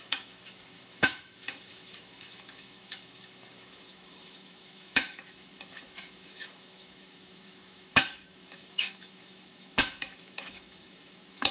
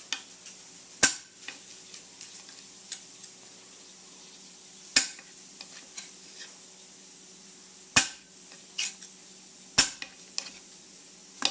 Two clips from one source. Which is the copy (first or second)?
first